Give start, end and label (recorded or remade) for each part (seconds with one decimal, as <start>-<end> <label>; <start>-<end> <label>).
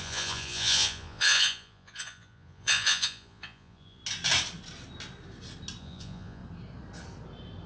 0.0-4.0 remade; 4.0-5.8 recorded; 5.8-6.4 remade; 6.4-7.7 recorded